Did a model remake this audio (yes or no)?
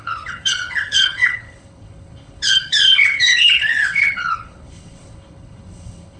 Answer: yes